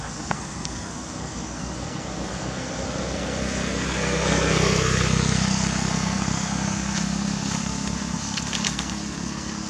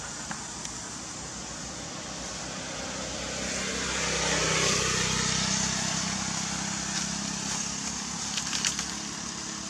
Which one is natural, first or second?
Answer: second